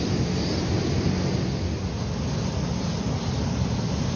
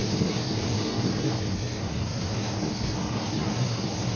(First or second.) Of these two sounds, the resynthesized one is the second